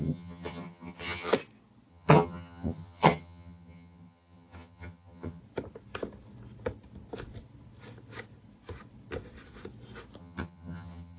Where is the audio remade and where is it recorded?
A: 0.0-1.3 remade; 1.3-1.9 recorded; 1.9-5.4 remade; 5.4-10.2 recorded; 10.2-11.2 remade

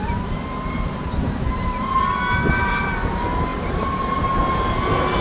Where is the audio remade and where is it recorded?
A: 0.0-5.2 recorded

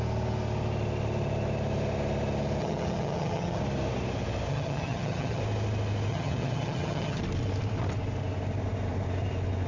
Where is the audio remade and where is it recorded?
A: 0.0-2.6 recorded; 2.6-3.6 remade; 3.6-4.5 recorded; 4.5-5.4 remade; 5.4-6.1 recorded; 6.1-7.2 remade; 7.2-9.7 recorded

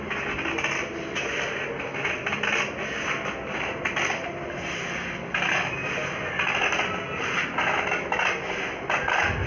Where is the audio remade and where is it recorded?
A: 0.0-9.5 recorded

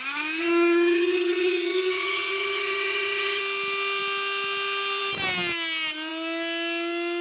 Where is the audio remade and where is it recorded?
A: 0.0-0.4 recorded; 0.4-3.4 remade; 3.4-7.2 recorded

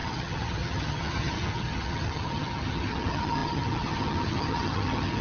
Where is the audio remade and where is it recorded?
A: 0.0-5.2 remade

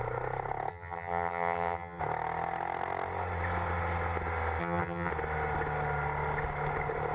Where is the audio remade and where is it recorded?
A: 0.0-0.7 recorded; 0.7-2.0 remade; 2.0-4.6 recorded; 4.6-5.1 remade; 5.1-7.1 recorded

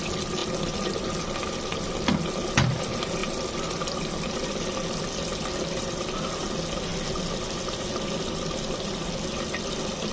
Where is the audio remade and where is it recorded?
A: 0.0-10.1 recorded